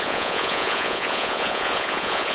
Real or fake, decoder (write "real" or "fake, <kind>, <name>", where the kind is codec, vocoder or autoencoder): fake, vocoder, Vocos